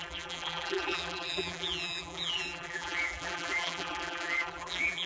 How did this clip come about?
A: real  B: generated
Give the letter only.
B